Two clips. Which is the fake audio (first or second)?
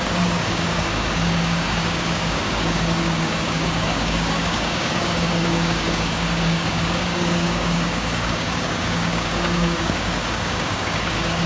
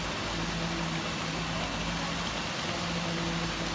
first